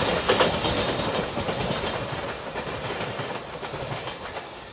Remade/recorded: recorded